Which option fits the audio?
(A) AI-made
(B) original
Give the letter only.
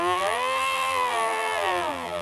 A